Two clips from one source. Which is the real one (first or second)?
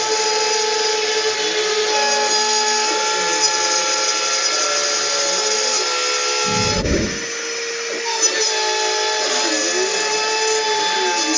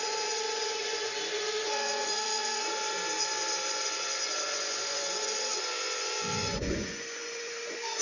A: first